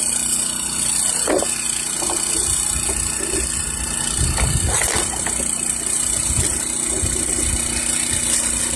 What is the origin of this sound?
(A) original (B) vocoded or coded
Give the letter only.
A